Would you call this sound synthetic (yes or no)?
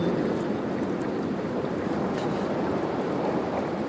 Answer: no